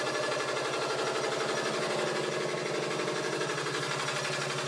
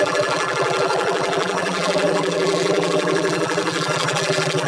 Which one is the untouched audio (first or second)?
first